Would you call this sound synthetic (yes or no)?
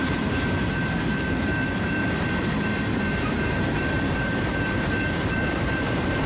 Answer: yes